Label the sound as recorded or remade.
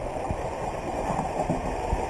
recorded